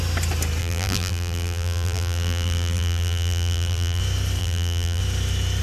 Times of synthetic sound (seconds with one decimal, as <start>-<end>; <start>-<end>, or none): 0.6-4.0; 4.4-5.0